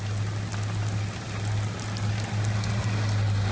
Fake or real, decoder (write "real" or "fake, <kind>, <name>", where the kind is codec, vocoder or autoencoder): real